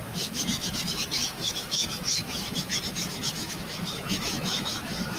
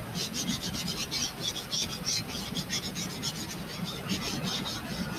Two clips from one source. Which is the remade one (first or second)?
first